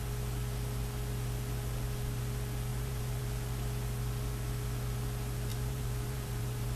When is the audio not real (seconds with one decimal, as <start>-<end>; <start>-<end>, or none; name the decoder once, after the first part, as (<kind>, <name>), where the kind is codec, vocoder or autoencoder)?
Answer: 2.7-3.2 (vocoder, BigVGAN v2); 5.5-6.8